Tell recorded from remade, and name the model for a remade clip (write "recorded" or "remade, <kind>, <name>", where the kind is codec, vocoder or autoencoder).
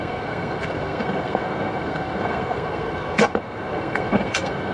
remade, codec, SNAC